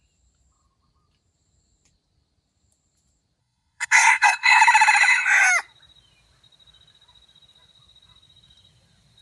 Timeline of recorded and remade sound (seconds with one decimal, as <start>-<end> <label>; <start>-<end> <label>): 0.0-3.4 recorded; 3.4-4.6 remade; 4.6-9.2 recorded